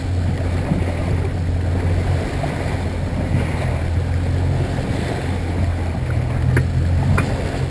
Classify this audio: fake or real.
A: real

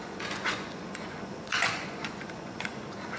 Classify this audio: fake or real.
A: fake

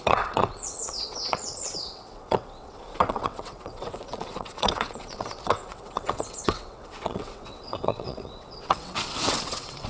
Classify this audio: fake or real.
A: fake